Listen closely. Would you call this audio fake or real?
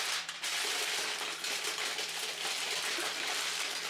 real